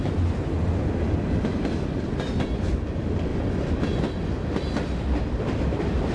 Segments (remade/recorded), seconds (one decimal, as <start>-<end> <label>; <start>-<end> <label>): 0.0-6.1 recorded